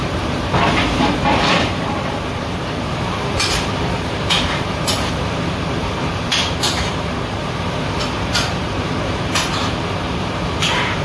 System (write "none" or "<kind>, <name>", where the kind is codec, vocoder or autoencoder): vocoder, BigVGAN v2